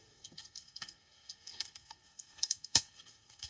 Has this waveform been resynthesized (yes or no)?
yes